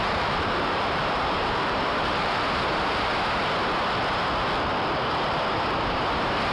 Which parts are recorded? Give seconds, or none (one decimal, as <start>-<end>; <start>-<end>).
3.1-5.1